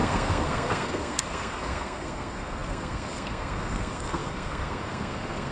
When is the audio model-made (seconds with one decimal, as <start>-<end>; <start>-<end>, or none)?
0.0-5.5